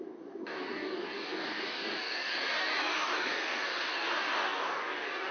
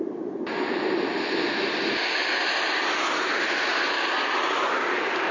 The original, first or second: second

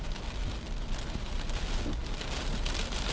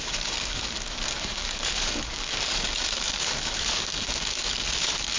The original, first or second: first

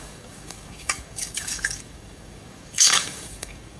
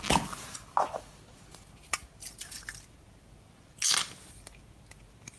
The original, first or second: second